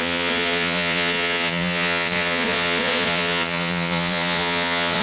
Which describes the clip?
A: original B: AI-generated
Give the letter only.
B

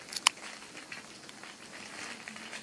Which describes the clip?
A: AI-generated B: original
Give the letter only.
A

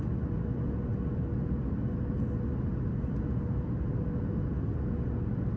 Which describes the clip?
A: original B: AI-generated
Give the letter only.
A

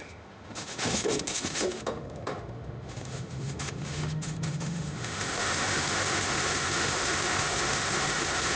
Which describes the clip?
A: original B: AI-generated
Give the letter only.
B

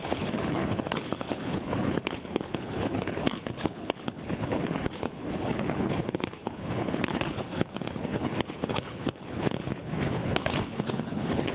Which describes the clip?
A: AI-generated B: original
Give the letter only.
A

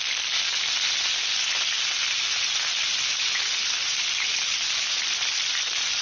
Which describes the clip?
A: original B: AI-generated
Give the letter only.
A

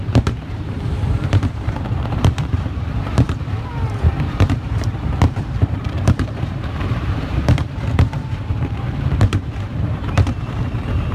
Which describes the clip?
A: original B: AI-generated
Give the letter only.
B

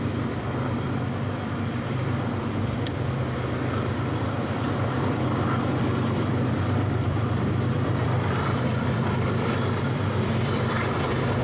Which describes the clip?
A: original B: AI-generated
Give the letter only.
B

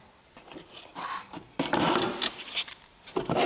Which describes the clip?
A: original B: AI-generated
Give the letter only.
A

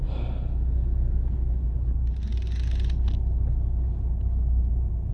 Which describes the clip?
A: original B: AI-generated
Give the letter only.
A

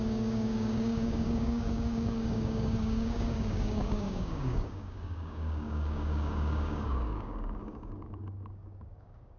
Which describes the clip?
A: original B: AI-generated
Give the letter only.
B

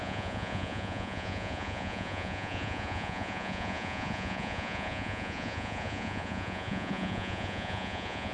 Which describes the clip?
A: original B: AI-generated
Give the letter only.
B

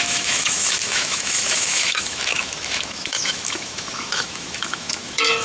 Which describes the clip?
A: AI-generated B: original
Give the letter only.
A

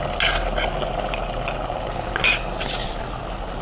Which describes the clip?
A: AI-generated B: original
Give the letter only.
B